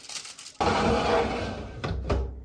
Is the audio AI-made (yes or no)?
no